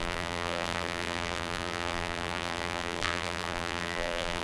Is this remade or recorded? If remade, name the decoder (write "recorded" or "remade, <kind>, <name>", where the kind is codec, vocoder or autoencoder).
remade, vocoder, BigVGAN v2